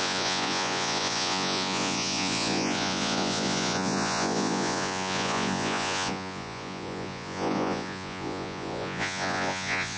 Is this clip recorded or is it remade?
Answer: remade